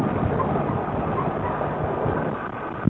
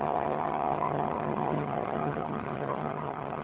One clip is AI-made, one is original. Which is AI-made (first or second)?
second